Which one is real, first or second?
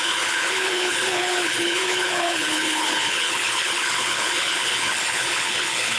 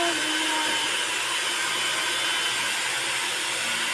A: second